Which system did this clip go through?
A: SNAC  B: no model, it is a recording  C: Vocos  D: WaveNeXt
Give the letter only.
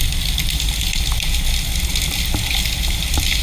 B